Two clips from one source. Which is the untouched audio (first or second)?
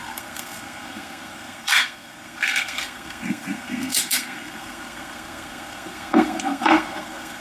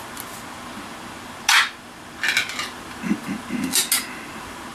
second